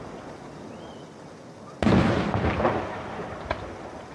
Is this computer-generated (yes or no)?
no